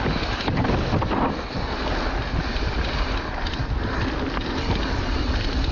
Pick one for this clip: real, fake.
real